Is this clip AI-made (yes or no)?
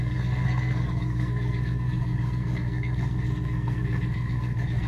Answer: yes